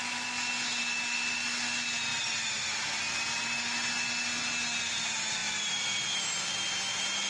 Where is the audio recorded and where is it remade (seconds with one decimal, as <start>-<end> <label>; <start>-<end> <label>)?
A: 0.0-7.3 recorded